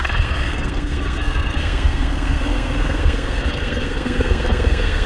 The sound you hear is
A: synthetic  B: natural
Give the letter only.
A